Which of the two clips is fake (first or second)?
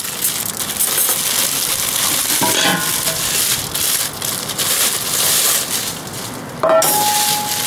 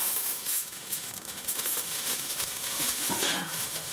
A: second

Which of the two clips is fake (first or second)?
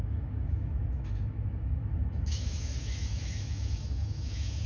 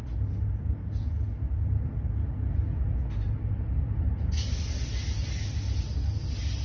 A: first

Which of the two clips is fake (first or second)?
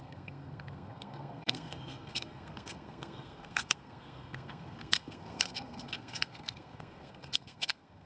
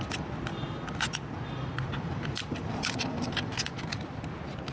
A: first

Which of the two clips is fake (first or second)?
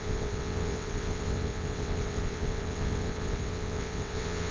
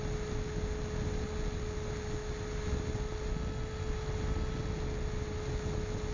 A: first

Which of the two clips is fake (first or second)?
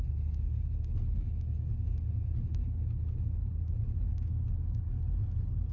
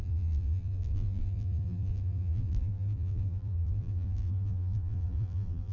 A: second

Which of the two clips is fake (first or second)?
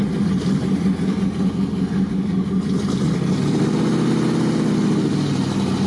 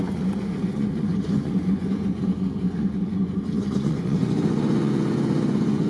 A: second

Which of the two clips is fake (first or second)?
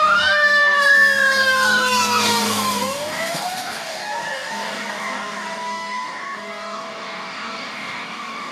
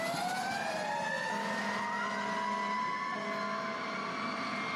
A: first